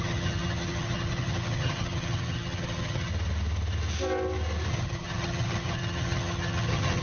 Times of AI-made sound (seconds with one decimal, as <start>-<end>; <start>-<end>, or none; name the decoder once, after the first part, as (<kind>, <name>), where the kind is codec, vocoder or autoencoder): 0.0-3.1 (vocoder, HiFi-GAN); 4.7-7.0